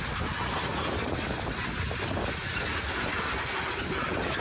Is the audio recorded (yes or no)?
yes